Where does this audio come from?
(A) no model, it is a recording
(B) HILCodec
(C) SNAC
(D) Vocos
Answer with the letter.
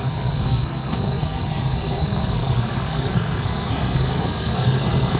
C